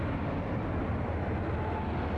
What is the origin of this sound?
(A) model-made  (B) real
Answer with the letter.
B